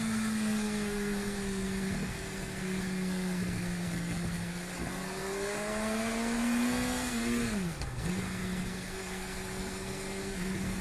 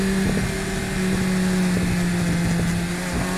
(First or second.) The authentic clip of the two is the second